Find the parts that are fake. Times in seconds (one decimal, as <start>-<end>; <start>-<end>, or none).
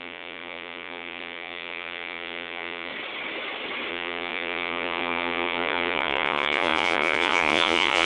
0.0-2.9; 3.9-8.1